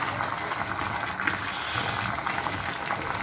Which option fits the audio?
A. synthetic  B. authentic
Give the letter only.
B